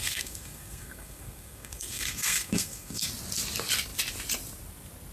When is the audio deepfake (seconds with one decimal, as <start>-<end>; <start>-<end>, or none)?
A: 0.0-3.1